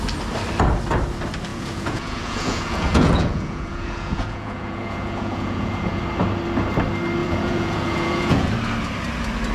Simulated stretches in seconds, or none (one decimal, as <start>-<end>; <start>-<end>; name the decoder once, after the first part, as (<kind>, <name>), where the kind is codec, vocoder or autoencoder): 1.5-6.0 (vocoder, Vocos); 7.2-8.5